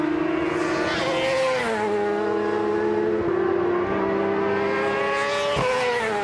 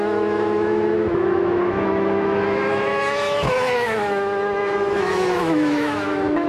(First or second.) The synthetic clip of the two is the second